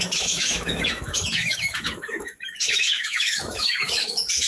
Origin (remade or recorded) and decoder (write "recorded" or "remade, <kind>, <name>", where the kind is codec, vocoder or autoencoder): remade, autoencoder, DAC-VAE